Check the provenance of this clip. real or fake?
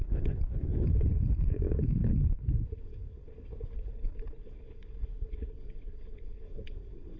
fake